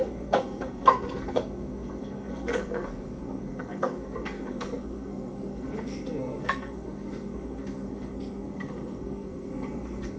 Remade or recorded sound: remade